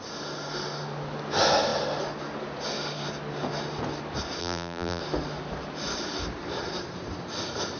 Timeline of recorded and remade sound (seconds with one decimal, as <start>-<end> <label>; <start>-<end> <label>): 0.0-4.4 recorded; 4.4-5.0 remade; 5.0-7.8 recorded